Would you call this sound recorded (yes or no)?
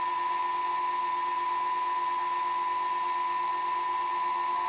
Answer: yes